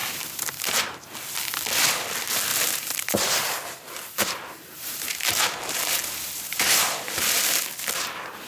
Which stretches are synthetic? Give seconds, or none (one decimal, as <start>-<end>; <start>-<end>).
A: 0.0-0.9; 2.5-7.6